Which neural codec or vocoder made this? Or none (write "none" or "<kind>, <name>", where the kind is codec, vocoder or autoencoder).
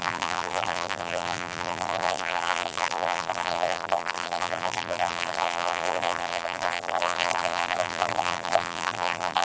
vocoder, BigVGAN v2